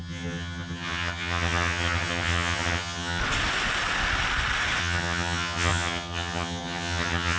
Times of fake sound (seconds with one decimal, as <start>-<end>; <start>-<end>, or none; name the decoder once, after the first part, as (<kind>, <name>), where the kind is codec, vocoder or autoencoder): 0.0-3.2 (vocoder, HiFi-GAN); 4.8-7.4